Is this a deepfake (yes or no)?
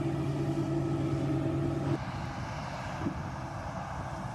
no